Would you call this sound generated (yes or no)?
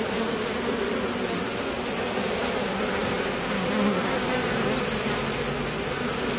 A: no